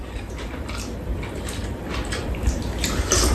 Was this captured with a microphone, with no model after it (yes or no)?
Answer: yes